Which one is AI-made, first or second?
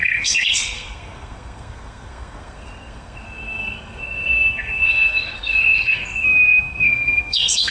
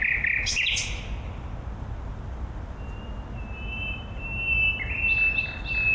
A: first